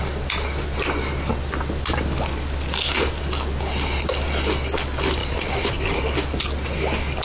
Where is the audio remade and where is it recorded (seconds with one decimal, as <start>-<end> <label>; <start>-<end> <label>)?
0.0-5.2 recorded; 5.2-6.0 remade; 6.0-7.2 recorded